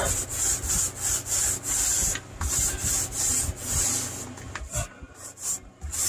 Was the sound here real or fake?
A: real